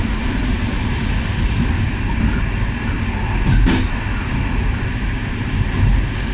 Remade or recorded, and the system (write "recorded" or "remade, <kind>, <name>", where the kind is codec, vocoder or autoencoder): recorded